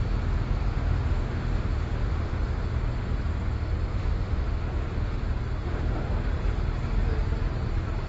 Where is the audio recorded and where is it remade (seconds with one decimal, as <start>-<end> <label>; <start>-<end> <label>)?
0.0-0.6 recorded; 0.6-2.7 remade; 2.7-3.9 recorded; 3.9-5.3 remade; 5.3-5.7 recorded; 5.7-6.3 remade; 6.3-8.1 recorded